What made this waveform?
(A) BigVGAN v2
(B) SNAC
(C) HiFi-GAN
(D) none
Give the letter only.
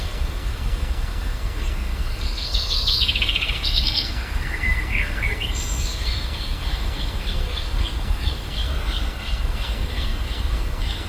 B